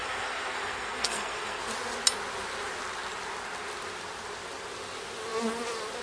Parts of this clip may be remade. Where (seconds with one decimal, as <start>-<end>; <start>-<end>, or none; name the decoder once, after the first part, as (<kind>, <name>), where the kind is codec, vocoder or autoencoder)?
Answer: 0.0-1.6 (codec, SNAC)